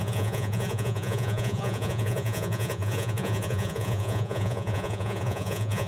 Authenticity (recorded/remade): remade